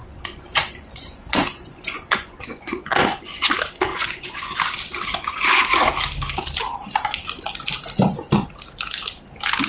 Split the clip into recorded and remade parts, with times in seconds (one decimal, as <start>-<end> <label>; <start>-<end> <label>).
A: 0.0-3.4 remade; 3.4-3.9 recorded; 3.9-4.5 remade; 4.5-9.7 recorded